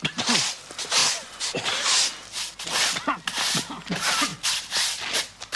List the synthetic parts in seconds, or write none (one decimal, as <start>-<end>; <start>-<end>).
1.0-1.6